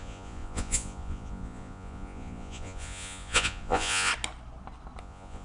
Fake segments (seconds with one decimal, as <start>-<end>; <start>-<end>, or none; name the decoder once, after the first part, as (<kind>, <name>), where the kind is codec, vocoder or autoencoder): 0.0-4.1 (vocoder, Vocos); 5.0-5.4